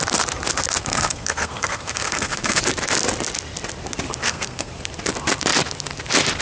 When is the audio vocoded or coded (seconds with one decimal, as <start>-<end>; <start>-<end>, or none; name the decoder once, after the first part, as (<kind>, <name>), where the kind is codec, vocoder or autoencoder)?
0.8-2.6 (codec, SNAC); 4.2-4.7